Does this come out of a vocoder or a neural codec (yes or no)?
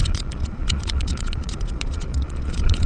yes